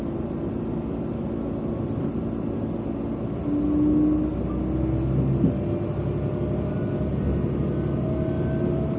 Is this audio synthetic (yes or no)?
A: no